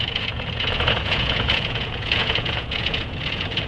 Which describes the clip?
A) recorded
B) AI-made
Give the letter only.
B